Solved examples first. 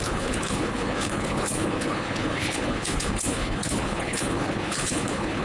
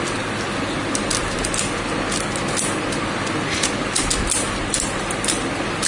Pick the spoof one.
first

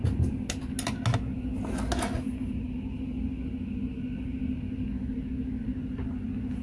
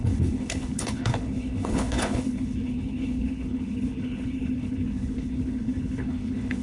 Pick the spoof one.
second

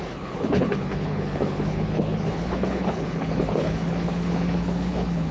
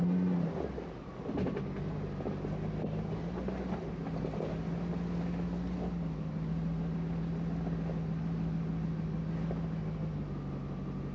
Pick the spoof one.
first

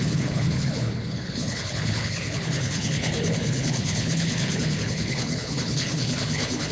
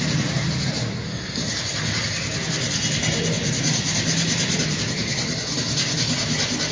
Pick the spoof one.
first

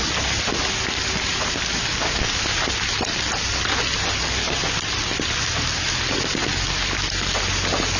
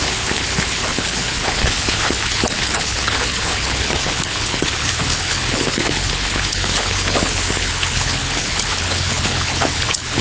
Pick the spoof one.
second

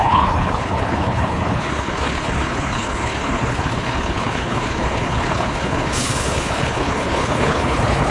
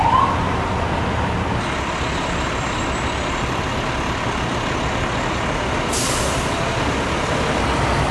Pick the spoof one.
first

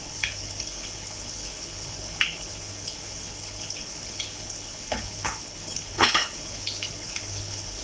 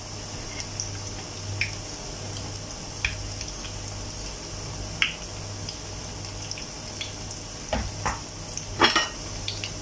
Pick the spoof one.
first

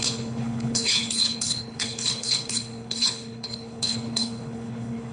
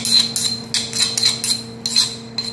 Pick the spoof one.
first